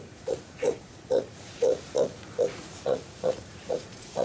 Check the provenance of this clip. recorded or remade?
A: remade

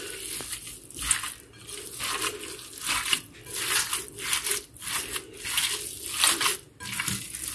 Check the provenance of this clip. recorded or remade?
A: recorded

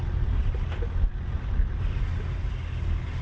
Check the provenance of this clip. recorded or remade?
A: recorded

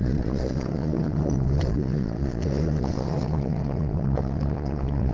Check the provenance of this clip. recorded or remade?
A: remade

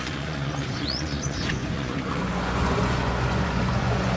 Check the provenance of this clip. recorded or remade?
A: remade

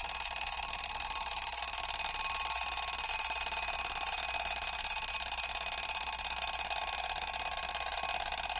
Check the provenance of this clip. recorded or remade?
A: recorded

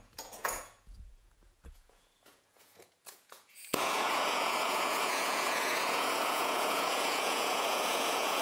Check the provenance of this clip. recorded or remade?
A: remade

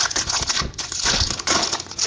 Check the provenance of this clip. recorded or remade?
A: remade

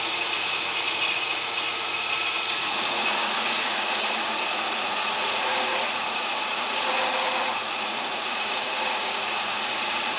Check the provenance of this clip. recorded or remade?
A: remade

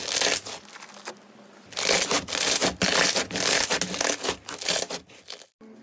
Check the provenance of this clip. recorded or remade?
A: recorded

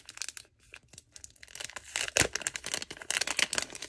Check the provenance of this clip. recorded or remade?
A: recorded